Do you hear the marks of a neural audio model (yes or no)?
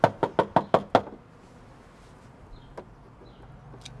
no